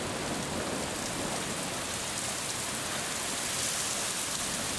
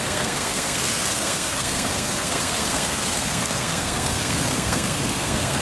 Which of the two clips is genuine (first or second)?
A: first